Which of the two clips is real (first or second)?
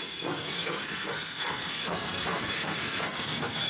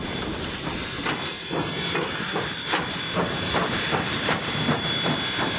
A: second